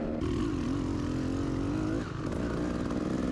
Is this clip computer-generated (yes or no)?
no